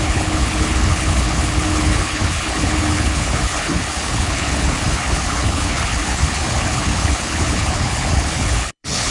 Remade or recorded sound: remade